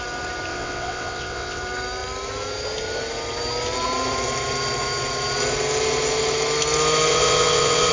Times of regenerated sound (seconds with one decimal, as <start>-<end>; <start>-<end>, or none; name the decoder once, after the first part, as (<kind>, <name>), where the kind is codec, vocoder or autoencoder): 0.5-1.6 (vocoder, WaveNeXt); 7.1-7.9